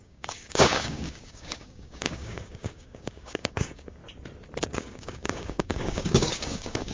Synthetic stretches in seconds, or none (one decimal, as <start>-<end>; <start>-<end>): 0.0-4.0; 4.6-6.9